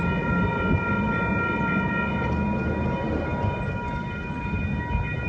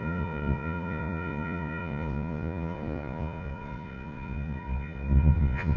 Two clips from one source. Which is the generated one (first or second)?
second